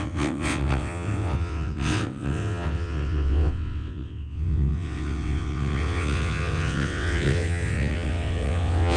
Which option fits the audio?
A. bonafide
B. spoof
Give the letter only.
B